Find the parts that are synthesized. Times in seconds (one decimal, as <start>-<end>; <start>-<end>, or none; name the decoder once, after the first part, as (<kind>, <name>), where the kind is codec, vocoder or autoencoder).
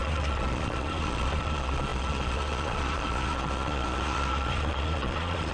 0.0-5.5 (vocoder, Vocos)